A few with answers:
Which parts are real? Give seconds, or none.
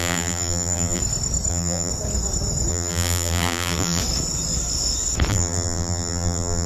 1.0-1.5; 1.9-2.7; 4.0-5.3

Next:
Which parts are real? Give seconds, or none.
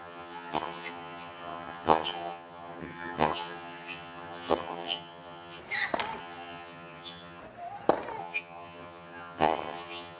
5.6-6.2; 7.4-8.2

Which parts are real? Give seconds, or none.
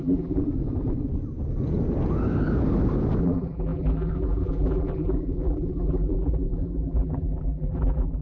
0.4-3.2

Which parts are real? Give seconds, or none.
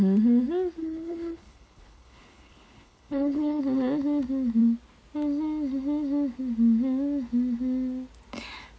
0.0-0.8; 3.6-8.8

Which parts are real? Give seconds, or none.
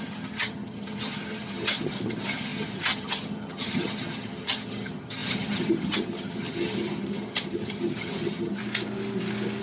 8.6-9.6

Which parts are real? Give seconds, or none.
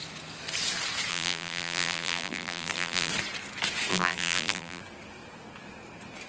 0.0-1.1; 3.1-3.9; 4.8-6.3